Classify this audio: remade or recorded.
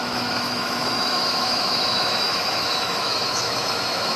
remade